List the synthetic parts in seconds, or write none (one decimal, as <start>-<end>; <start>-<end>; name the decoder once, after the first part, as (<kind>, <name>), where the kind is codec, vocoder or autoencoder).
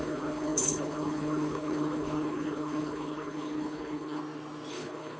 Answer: 0.0-4.2 (codec, HILCodec); 4.7-5.2